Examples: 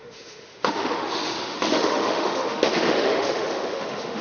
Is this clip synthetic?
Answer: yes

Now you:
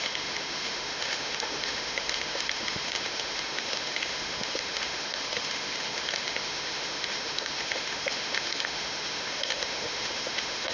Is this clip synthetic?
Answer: yes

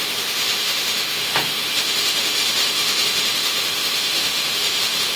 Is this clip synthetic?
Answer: yes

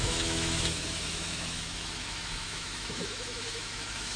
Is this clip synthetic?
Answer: yes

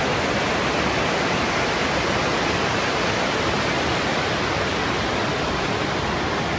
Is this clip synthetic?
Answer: no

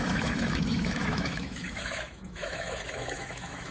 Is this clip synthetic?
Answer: yes